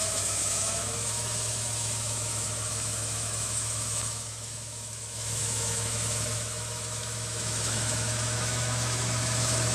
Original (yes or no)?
no